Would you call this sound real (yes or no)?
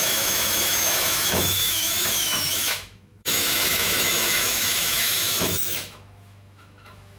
no